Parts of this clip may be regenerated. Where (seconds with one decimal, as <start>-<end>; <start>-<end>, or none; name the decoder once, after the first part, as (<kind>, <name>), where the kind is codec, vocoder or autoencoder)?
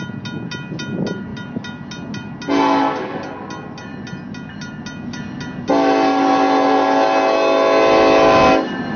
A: none